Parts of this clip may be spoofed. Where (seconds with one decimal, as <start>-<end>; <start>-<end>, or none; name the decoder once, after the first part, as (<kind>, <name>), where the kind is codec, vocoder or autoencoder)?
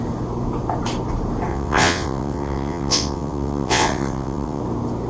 1.5-4.6 (vocoder, WaveNeXt)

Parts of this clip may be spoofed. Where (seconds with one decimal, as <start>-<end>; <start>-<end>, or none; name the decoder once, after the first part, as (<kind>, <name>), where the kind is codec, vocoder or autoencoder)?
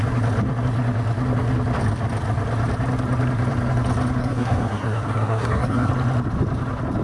4.2-5.9 (codec, SNAC)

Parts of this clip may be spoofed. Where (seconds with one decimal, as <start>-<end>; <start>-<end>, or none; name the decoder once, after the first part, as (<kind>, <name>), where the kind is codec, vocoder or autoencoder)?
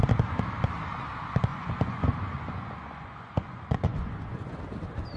1.5-4.6 (vocoder, Vocos)